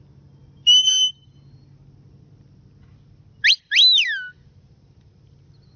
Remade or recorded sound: recorded